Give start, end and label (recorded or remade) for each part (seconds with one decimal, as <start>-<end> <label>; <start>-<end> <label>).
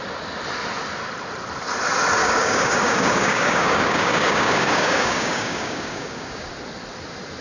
0.0-2.2 recorded; 2.2-6.5 remade; 6.5-7.4 recorded